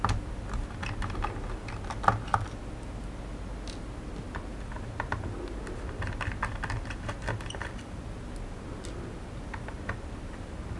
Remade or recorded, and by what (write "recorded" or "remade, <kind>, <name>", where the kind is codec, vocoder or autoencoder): recorded